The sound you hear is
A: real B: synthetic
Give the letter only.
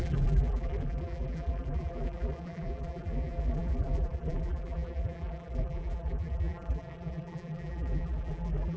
B